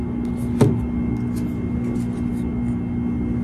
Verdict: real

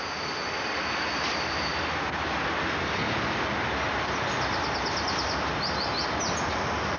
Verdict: real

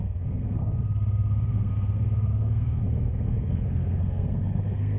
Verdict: fake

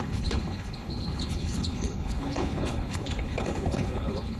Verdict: fake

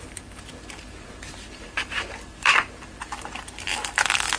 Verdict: fake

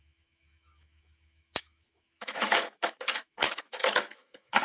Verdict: fake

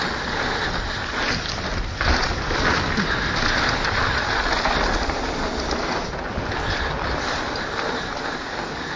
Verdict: real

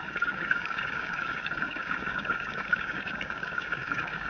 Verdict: fake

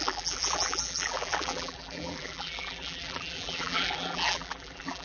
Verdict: fake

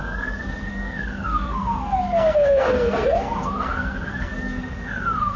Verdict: fake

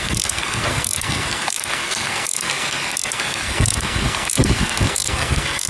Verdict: fake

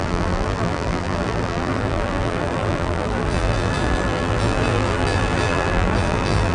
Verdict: fake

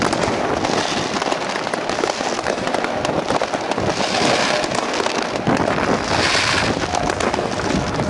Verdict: real